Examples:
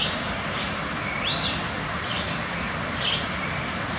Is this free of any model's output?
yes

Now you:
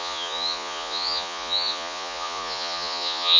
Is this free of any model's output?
no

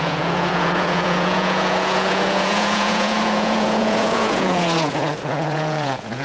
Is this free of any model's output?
no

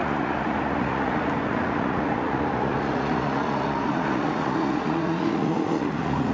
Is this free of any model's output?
no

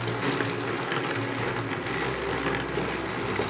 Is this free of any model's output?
yes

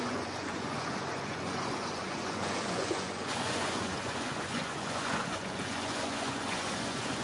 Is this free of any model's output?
no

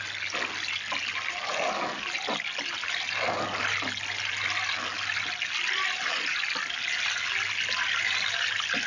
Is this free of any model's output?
yes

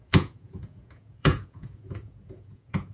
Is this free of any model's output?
no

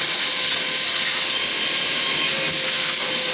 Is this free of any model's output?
yes